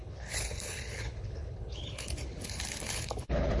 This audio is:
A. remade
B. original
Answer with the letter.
A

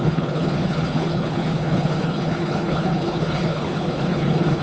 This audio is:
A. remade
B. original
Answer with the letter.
A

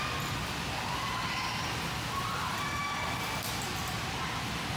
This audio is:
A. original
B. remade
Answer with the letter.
A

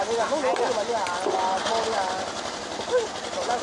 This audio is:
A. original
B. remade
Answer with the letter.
A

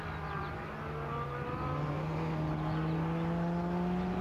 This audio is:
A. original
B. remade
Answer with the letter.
A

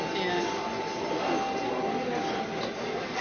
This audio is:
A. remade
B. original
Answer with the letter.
B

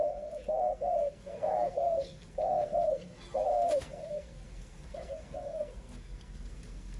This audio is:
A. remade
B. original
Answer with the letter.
A